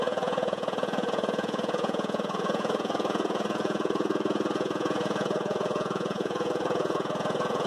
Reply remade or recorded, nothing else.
remade